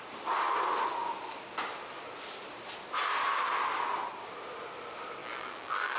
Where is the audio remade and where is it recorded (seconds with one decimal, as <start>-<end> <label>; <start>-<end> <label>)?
0.0-5.2 recorded; 5.2-6.0 remade